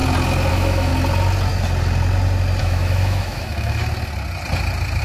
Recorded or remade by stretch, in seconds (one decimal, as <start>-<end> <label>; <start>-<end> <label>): 0.0-0.5 recorded; 0.5-0.9 remade; 0.9-2.6 recorded; 2.6-3.8 remade; 3.8-5.0 recorded